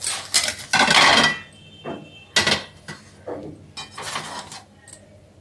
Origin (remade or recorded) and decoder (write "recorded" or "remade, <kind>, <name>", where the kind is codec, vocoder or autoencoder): recorded